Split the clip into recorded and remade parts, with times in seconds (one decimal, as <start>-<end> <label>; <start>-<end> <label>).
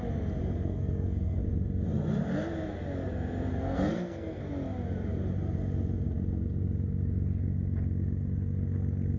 0.0-0.4 recorded; 0.4-1.4 remade; 1.4-3.5 recorded; 3.5-4.4 remade; 4.4-9.2 recorded